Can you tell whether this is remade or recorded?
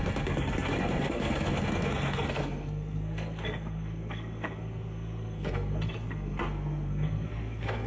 remade